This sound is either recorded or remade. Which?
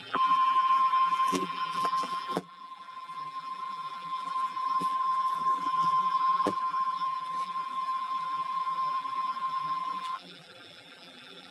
remade